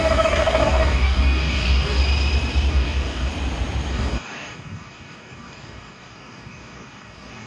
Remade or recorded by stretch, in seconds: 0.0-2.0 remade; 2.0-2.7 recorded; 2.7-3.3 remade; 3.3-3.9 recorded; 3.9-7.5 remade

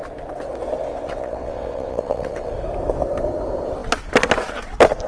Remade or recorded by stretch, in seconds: 0.0-0.9 recorded; 0.9-2.5 remade; 2.5-5.1 recorded

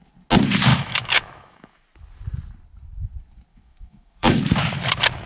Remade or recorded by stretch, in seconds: 0.0-0.7 recorded; 0.7-1.8 remade; 1.8-3.5 recorded; 3.5-4.4 remade; 4.4-5.3 recorded

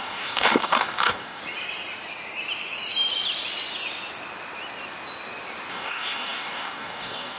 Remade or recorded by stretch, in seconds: 0.0-1.4 remade; 1.4-5.7 recorded; 5.7-7.4 remade

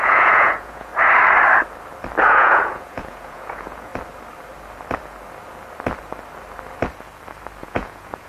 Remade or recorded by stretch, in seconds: 0.0-0.9 remade; 0.9-2.2 recorded; 2.2-3.9 remade; 3.9-7.6 recorded; 7.6-8.3 remade

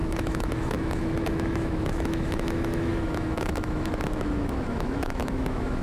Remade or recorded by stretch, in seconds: 0.0-5.8 remade

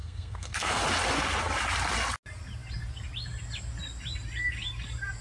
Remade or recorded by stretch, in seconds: 0.0-0.8 remade; 0.8-5.2 recorded